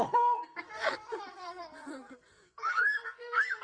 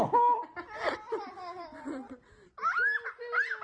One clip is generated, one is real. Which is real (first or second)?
second